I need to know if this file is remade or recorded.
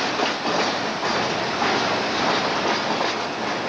recorded